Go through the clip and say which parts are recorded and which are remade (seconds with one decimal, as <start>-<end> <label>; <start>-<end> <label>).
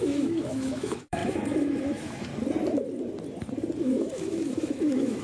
0.0-2.3 remade; 2.3-3.8 recorded; 3.8-5.2 remade